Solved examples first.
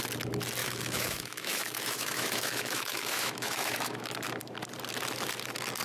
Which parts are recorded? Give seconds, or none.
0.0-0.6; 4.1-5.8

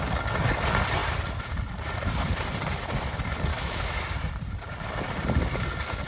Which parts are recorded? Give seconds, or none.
0.0-3.5; 4.0-6.1

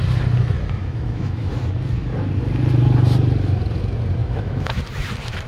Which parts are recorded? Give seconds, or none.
0.0-0.8; 1.5-4.2; 4.8-5.5